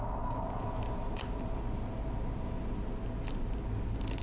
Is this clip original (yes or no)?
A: yes